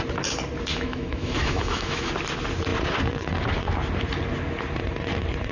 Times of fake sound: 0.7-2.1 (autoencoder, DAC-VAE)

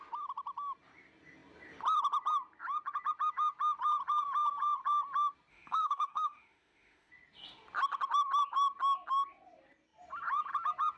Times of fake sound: 5.5-7.1 (autoencoder, DAC-VAE)

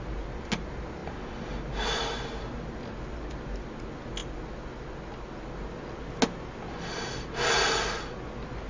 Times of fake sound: none

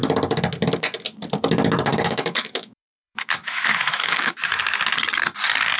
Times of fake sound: 1.9-4.6 (autoencoder, DAC-VAE)